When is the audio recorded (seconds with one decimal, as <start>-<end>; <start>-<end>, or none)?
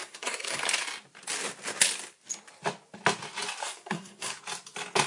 0.6-3.6; 4.4-5.1